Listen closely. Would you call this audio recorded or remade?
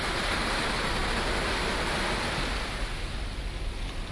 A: recorded